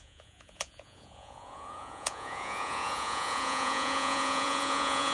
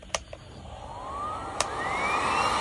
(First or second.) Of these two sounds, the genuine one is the second